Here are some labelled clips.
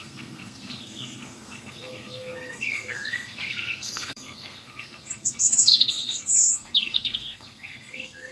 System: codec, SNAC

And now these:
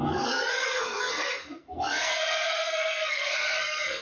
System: codec, SNAC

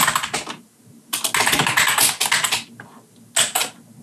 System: none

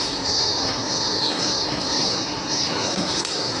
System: codec, SNAC